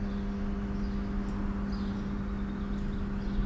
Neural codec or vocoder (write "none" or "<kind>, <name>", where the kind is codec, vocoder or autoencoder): none